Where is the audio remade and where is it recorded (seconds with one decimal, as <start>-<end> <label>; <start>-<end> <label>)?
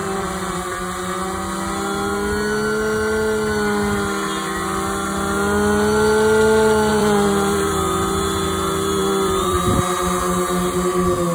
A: 0.0-0.8 remade; 0.8-6.9 recorded; 6.9-7.7 remade; 7.7-9.0 recorded; 9.0-9.6 remade; 9.6-11.3 recorded